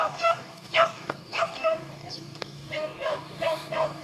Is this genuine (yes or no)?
no